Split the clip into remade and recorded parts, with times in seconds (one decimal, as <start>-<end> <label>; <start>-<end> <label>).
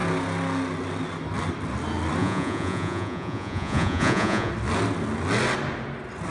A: 0.0-2.2 recorded; 2.2-4.5 remade; 4.5-6.3 recorded